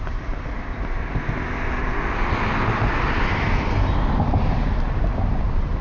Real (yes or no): yes